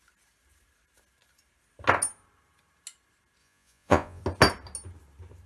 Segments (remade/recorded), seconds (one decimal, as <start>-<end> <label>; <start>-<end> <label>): 0.0-3.4 recorded; 3.4-4.2 remade; 4.2-5.5 recorded